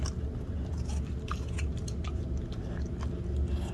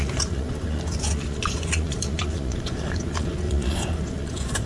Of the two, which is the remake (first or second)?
second